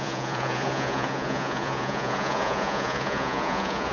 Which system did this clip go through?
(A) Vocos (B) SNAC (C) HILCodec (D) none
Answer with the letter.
A